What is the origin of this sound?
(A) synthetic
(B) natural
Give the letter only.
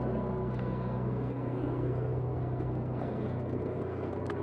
A